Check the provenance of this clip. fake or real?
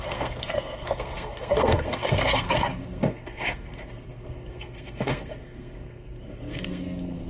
fake